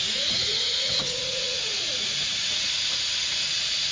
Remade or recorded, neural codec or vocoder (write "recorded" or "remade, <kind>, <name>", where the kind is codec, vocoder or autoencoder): remade, vocoder, Vocos